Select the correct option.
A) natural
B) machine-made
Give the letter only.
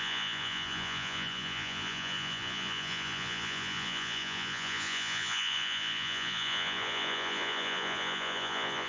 B